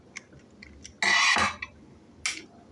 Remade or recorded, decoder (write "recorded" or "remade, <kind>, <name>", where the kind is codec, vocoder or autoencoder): recorded